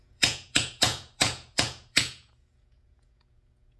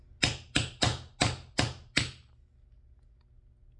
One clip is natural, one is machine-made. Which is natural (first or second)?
second